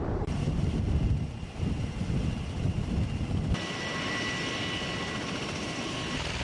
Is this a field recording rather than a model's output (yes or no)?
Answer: no